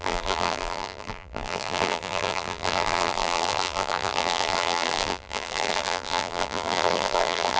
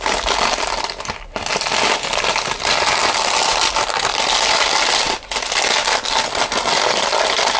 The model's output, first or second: first